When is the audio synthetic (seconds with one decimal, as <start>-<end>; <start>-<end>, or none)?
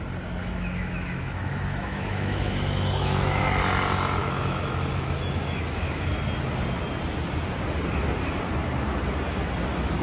0.4-3.4; 4.2-6.1